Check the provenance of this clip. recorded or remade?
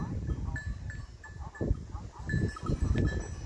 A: recorded